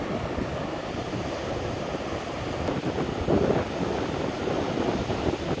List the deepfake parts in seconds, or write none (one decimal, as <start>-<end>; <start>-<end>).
0.5-1.2